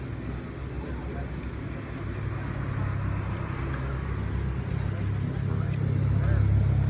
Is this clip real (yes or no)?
yes